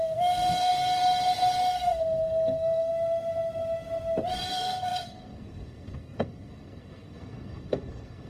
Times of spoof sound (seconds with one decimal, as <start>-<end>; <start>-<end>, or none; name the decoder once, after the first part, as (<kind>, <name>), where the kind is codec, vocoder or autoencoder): 0.0-0.7 (codec, SNAC); 1.6-2.9; 4.5-8.3